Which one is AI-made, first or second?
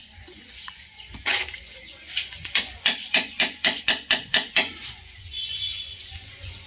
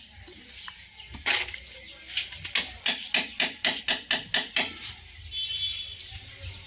first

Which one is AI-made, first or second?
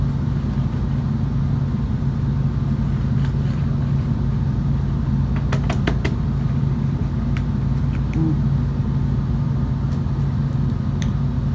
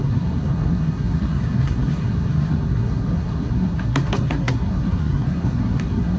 second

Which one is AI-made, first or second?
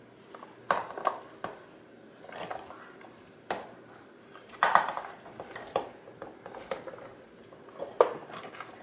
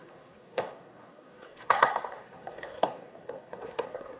second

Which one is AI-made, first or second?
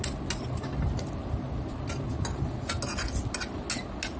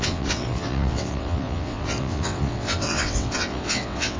second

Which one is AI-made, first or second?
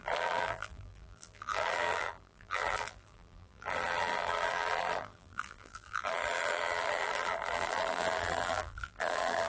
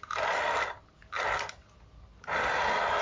first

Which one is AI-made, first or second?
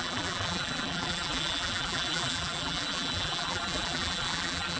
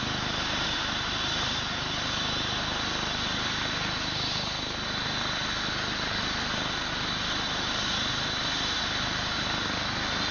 first